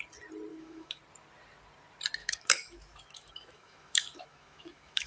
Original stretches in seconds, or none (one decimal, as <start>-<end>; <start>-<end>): 0.0-0.5; 1.0-2.2